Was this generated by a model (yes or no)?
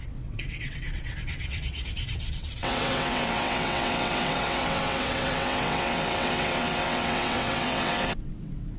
yes